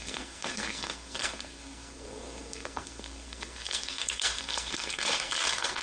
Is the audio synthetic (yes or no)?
yes